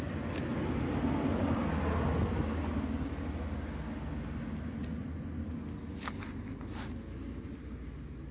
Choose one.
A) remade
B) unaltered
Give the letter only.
B